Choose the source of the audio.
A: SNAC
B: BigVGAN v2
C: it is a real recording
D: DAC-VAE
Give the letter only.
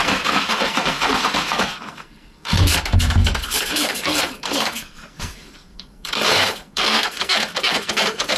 A